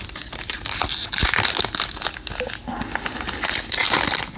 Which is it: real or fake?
real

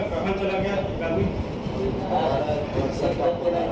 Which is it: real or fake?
real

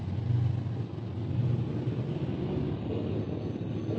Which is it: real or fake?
real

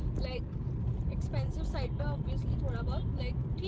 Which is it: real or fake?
real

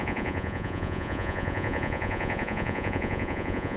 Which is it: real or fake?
fake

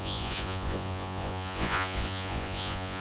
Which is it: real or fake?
fake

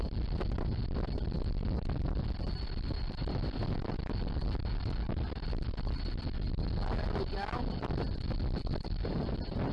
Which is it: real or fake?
real